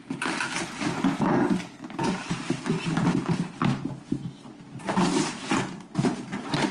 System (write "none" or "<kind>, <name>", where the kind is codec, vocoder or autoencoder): none